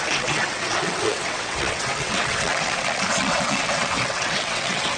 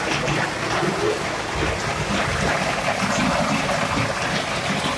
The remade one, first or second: first